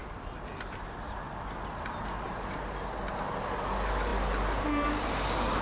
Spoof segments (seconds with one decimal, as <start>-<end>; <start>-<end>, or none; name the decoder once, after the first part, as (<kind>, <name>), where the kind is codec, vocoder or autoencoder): none